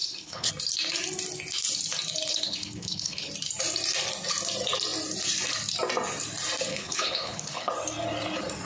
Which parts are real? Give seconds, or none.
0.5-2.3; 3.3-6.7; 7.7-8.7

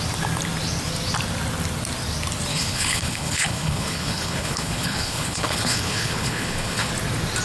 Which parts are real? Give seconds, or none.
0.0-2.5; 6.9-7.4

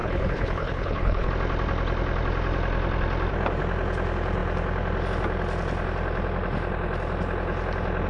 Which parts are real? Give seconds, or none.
1.3-8.1

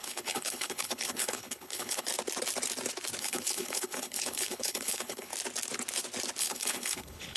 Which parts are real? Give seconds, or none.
2.1-3.2; 5.3-6.4

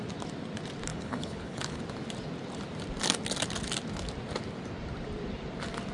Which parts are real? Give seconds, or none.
0.0-0.9; 1.8-5.9